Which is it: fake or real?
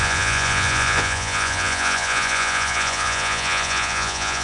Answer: fake